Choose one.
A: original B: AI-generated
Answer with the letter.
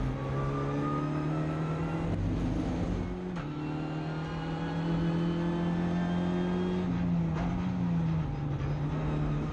A